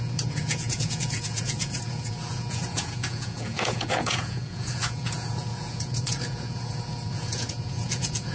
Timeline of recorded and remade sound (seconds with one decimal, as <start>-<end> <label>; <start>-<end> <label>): 0.0-8.3 remade